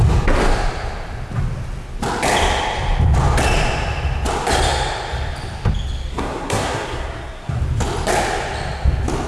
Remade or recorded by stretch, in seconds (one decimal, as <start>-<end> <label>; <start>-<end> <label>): 0.0-6.1 recorded; 6.1-7.6 remade; 7.6-9.3 recorded